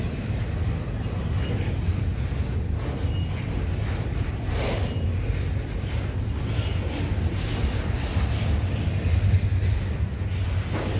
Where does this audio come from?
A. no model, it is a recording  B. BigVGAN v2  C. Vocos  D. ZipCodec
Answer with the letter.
A